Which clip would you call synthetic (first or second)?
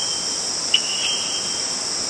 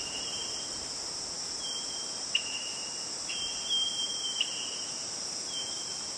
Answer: second